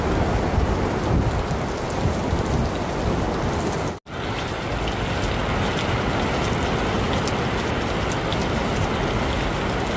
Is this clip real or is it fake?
real